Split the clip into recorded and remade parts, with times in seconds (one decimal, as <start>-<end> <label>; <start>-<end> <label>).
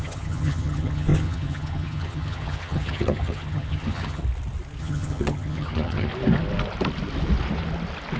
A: 0.0-4.2 remade; 4.2-4.8 recorded; 4.8-6.1 remade; 6.1-8.2 recorded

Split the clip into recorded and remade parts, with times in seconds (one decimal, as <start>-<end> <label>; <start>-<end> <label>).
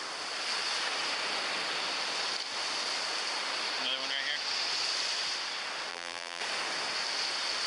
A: 0.0-5.9 recorded; 5.9-6.4 remade; 6.4-7.7 recorded